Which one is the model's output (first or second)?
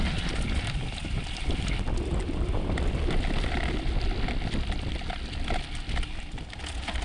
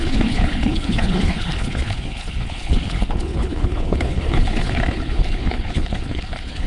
second